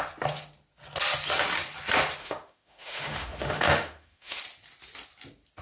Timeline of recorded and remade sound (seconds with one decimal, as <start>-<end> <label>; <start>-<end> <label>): 0.0-2.2 recorded; 2.2-4.4 remade; 4.4-5.6 recorded